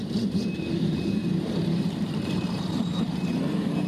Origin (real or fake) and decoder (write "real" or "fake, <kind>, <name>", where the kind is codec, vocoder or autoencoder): fake, vocoder, BigVGAN v2